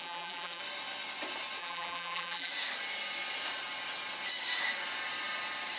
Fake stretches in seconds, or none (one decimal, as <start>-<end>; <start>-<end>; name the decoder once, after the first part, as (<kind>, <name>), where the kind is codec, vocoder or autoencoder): 0.0-0.6 (vocoder, BigVGAN v2); 1.6-2.5